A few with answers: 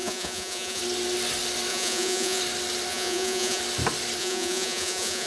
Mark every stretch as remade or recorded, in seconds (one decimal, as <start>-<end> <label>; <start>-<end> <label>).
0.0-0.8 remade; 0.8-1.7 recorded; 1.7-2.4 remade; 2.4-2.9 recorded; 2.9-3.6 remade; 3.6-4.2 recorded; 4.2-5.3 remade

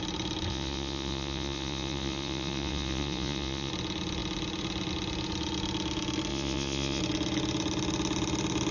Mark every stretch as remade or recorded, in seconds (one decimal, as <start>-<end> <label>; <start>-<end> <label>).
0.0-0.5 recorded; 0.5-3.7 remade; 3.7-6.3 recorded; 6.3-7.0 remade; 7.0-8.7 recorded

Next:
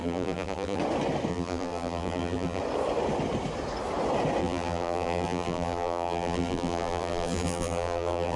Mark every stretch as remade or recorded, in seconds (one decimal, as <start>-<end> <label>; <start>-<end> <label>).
0.0-0.8 remade; 0.8-1.3 recorded; 1.3-2.6 remade; 2.6-4.4 recorded; 4.4-8.4 remade

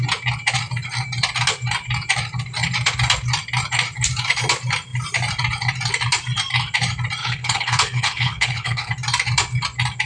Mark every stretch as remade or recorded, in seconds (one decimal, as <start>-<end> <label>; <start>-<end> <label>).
0.0-7.2 recorded; 7.2-8.9 remade; 8.9-10.1 recorded

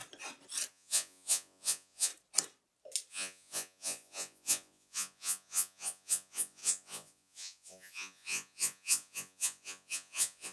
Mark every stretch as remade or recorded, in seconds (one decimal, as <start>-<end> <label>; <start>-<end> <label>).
0.0-0.7 recorded; 0.7-2.1 remade; 2.1-3.1 recorded; 3.1-10.5 remade